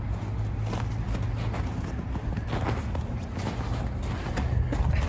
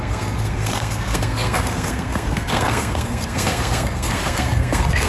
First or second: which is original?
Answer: first